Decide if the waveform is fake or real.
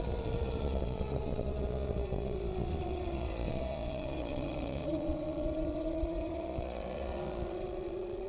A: fake